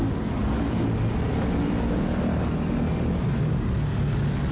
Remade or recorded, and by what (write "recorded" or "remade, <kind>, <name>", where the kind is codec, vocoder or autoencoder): recorded